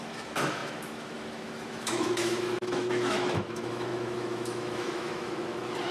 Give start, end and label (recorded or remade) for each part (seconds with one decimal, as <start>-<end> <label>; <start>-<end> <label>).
0.0-5.9 remade